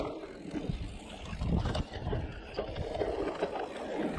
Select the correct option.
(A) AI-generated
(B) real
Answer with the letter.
B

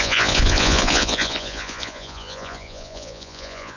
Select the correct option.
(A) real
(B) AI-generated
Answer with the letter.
B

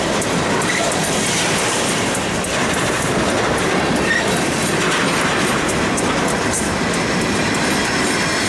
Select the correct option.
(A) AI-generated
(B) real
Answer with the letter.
B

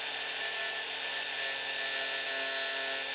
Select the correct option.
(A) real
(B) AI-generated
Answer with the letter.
A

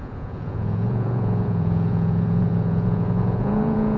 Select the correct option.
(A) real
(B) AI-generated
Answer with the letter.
B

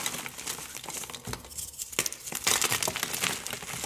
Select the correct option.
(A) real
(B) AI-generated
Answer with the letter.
A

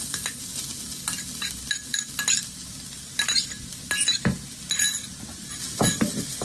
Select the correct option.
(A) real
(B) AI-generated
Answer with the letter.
A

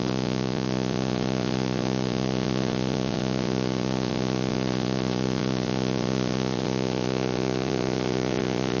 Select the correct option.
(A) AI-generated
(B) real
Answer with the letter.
A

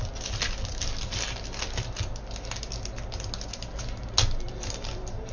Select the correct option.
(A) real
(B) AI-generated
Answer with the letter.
A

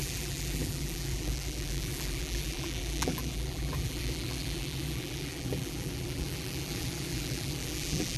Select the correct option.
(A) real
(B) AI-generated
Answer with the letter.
B